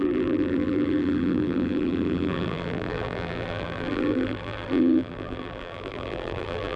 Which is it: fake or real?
fake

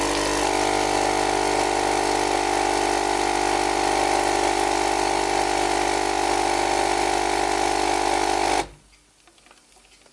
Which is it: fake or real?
real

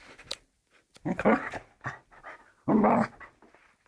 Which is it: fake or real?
real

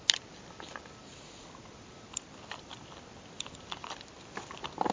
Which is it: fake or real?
real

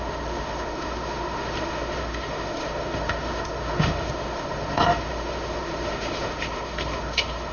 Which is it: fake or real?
fake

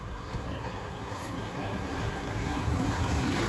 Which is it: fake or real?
fake